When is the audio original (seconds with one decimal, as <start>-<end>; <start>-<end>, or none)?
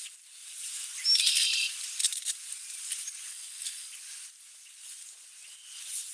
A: 0.0-3.3; 3.9-6.1